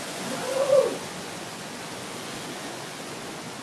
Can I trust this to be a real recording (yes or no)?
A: no